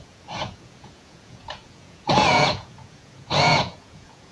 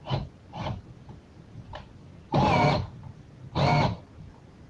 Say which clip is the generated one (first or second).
first